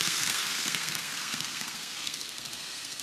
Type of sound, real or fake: fake